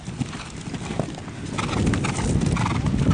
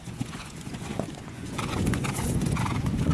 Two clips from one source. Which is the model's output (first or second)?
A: second